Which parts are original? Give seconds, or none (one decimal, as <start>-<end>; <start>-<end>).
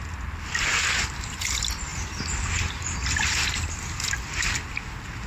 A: 0.0-5.3